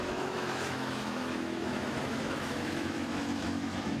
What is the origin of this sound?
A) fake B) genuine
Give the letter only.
A